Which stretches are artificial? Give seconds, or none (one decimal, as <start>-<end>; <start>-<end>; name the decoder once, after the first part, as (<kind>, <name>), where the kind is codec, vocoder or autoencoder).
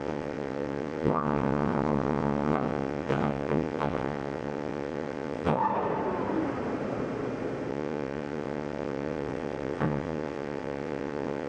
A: 0.0-5.6 (vocoder, WaveNeXt); 7.7-11.5